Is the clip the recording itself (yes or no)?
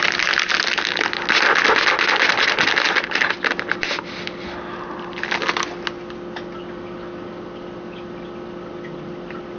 yes